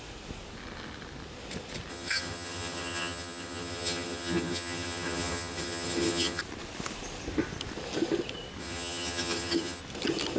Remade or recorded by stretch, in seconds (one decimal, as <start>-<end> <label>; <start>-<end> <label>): 0.0-1.9 recorded; 1.9-6.4 remade; 6.4-8.6 recorded; 8.6-9.8 remade; 9.8-10.4 recorded